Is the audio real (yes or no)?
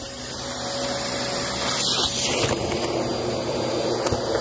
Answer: yes